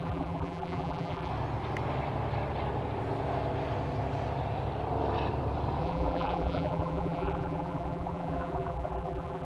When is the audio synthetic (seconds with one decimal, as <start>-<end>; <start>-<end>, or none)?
0.0-1.3; 5.8-9.4